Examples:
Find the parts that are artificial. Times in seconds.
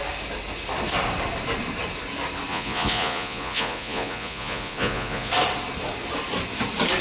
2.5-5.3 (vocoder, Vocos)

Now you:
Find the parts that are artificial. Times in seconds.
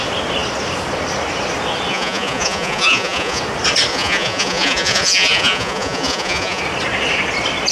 1.9-3.4 (vocoder, Vocos); 3.9-6.6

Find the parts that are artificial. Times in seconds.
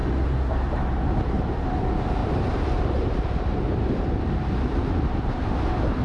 2.2-4.2 (vocoder, BigVGAN v2); 4.8-5.4